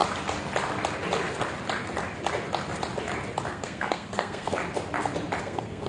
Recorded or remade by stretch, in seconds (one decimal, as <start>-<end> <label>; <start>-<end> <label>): 0.0-3.5 recorded; 3.5-4.6 remade; 4.6-5.4 recorded; 5.4-5.9 remade